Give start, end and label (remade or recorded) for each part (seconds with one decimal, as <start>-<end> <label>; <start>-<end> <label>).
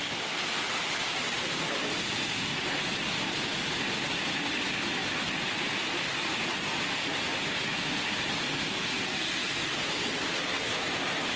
0.0-11.4 recorded